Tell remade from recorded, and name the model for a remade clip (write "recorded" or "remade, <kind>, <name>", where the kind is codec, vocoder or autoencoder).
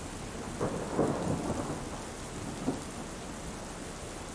recorded